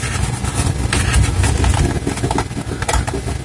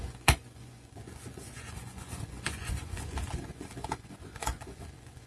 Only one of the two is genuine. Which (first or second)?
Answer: first